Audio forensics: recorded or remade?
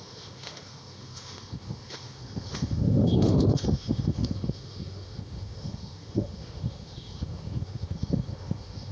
remade